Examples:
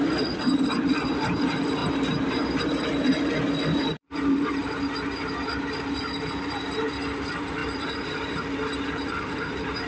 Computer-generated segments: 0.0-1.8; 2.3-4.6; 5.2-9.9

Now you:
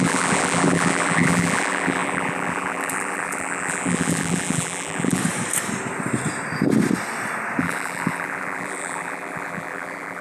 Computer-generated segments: 0.0-5.2; 7.6-10.2

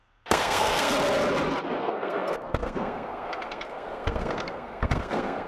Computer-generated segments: 0.0-0.9; 1.8-5.5

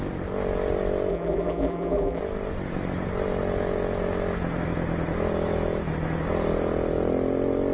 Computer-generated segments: 1.1-2.2

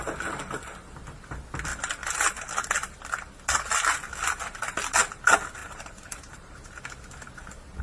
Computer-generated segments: 5.6-6.8